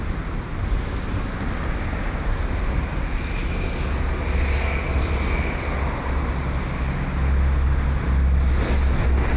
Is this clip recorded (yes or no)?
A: yes